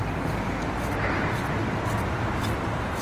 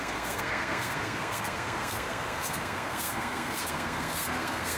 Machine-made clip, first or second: second